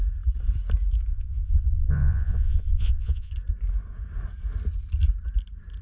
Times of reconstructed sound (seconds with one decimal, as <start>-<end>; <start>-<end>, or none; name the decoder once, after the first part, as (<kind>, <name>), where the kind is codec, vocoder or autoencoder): 1.1-3.3 (vocoder, Vocos)